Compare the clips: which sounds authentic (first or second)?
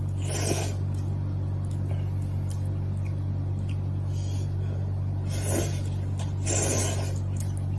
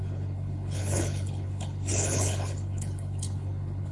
first